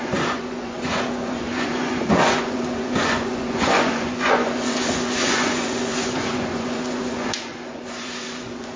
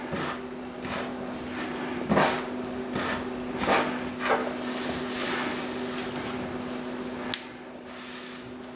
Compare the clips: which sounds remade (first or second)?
first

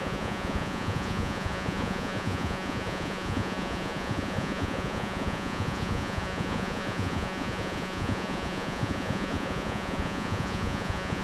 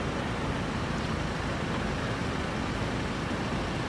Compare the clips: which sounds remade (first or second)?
first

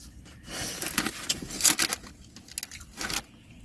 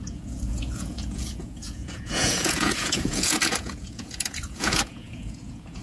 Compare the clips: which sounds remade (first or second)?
second